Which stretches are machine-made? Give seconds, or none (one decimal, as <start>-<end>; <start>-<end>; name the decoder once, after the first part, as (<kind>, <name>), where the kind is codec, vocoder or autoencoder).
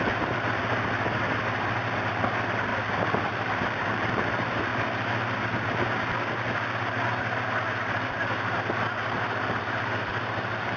0.0-0.6 (vocoder, BigVGAN v2); 2.1-2.7; 3.3-4.7; 9.6-10.8